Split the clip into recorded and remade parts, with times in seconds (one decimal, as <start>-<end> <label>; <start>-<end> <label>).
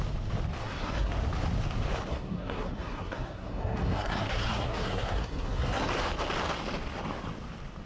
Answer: 0.0-0.6 recorded; 0.6-1.1 remade; 1.1-2.1 recorded; 2.1-5.9 remade; 5.9-7.9 recorded